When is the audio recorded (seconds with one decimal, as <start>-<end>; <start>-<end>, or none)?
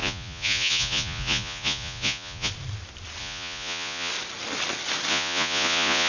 2.5-3.2; 4.1-5.1